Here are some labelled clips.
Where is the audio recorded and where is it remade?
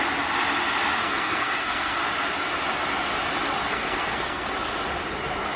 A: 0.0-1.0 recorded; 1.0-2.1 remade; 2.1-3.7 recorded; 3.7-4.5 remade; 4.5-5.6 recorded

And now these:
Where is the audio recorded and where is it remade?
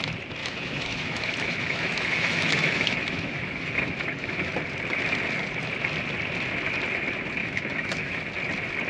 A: 0.0-0.4 recorded; 0.4-4.5 remade; 4.5-7.4 recorded; 7.4-8.2 remade; 8.2-8.9 recorded